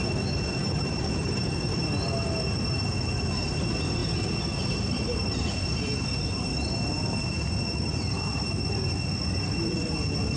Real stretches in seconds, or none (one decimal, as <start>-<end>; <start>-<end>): 0.0-0.6; 1.4-10.4